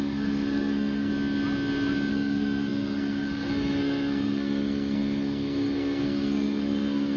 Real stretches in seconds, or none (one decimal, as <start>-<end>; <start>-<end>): 1.1-2.1

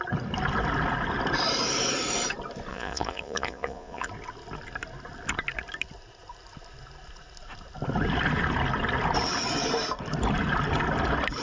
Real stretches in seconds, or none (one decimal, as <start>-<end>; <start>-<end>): 0.0-2.7; 4.1-11.4